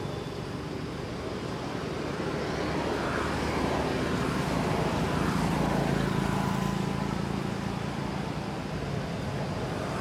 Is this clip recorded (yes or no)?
yes